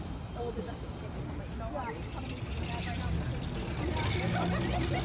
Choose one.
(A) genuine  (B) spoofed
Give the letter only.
A